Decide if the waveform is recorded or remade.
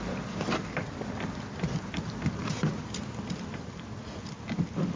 recorded